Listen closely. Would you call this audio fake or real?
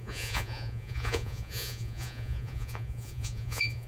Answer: fake